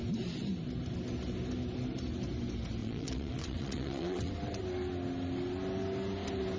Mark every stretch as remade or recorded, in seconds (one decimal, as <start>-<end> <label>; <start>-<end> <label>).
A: 0.0-2.8 recorded; 2.8-4.3 remade; 4.3-6.6 recorded